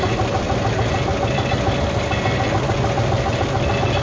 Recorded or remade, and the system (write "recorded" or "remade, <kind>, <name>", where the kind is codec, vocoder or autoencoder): recorded